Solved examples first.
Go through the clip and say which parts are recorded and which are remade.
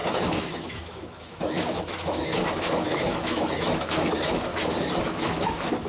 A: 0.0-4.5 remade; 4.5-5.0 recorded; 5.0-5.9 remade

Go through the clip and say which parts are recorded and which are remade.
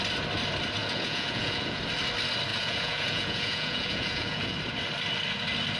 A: 0.0-0.8 recorded; 0.8-1.8 remade; 1.8-2.5 recorded; 2.5-4.6 remade; 4.6-5.8 recorded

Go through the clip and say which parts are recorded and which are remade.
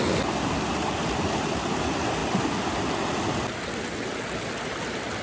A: 0.0-5.2 recorded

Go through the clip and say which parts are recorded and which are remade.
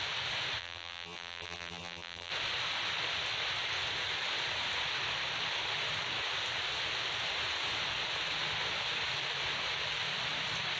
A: 0.0-0.6 recorded; 0.6-2.3 remade; 2.3-10.8 recorded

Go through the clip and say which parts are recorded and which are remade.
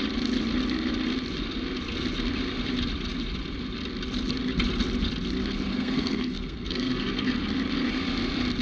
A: 0.0-5.7 recorded; 5.7-7.4 remade; 7.4-8.6 recorded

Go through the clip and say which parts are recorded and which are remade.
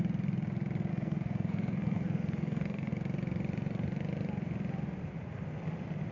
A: 0.0-0.9 recorded; 0.9-2.9 remade; 2.9-6.1 recorded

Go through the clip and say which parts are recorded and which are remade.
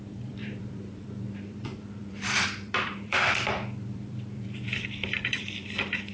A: 0.0-6.1 remade